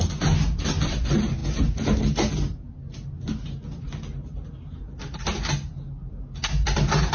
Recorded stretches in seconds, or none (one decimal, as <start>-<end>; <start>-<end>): 0.0-7.1